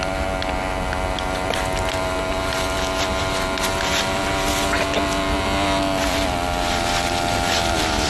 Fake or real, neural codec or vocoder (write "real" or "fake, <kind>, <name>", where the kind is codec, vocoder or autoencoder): real